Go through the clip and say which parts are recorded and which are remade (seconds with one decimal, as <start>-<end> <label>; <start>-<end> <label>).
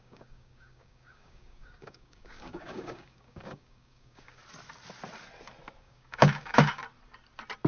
0.0-4.4 remade; 4.4-5.8 recorded; 5.8-6.8 remade; 6.8-7.7 recorded